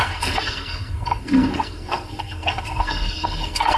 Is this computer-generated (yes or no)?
yes